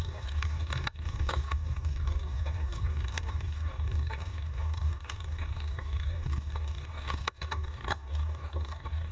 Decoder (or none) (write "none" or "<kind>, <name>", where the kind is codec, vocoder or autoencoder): codec, DAC